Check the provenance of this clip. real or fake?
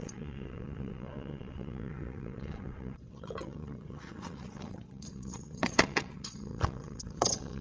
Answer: fake